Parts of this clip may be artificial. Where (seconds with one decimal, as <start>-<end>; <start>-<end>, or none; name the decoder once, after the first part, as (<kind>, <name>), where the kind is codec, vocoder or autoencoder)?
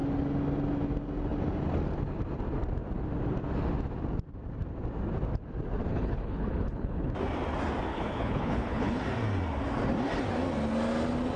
5.9-7.1 (codec, HILCodec); 7.9-9.0